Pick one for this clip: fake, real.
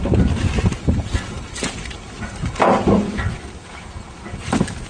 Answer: real